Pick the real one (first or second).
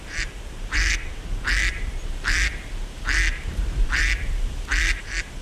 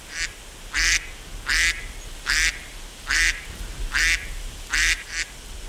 second